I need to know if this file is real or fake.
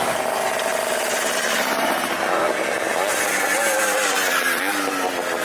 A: real